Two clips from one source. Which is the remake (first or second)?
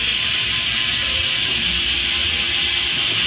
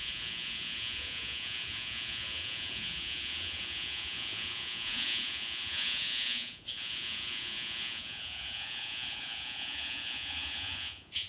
second